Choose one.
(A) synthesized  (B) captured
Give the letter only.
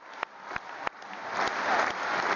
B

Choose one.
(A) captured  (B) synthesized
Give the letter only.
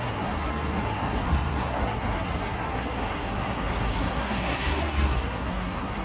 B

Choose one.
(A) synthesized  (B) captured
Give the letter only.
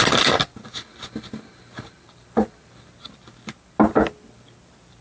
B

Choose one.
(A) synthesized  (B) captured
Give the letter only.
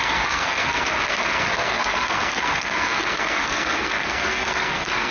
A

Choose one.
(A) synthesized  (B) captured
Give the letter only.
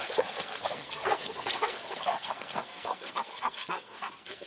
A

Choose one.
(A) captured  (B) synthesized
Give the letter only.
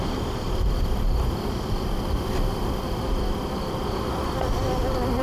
A